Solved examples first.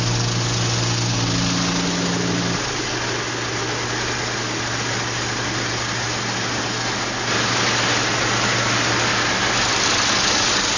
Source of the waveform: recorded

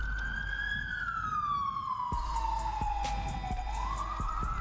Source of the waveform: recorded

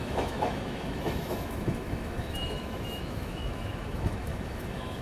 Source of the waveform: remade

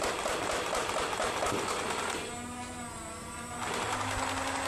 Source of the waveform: recorded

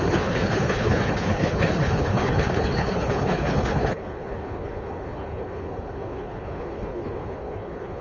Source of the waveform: remade